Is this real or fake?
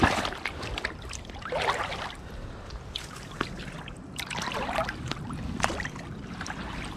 real